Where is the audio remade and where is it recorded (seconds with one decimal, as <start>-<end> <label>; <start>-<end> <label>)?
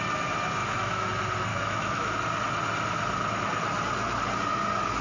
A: 0.0-0.6 recorded; 0.6-1.1 remade; 1.1-1.5 recorded; 1.5-2.1 remade; 2.1-5.0 recorded